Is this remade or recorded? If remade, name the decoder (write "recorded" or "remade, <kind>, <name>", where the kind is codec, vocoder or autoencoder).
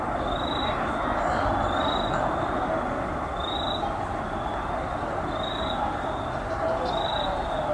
recorded